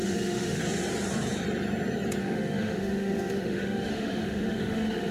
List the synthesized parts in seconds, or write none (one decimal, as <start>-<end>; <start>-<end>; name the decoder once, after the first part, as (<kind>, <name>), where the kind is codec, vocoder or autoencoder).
0.0-0.6 (autoencoder, DAC-VAE); 2.2-5.1